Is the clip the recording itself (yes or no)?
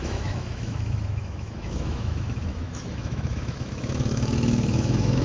no